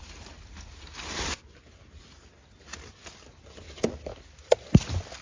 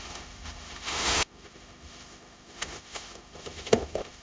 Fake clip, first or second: second